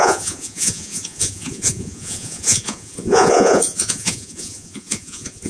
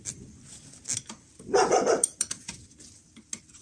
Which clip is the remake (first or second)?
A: first